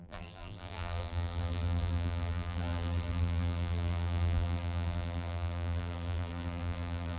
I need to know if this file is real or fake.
fake